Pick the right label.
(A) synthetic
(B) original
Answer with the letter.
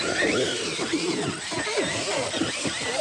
B